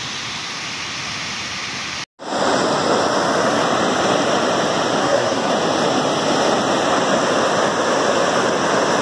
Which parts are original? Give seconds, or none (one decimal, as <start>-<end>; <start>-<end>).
0.0-5.0; 5.5-9.0